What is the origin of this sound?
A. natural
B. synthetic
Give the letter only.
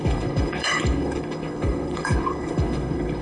B